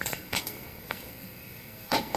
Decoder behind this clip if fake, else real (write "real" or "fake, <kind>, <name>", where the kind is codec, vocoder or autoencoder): fake, codec, SNAC